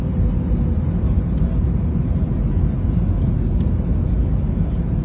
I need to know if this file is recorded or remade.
recorded